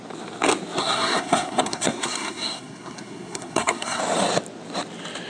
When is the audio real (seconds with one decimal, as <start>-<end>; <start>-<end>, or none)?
0.0-0.8; 4.0-5.3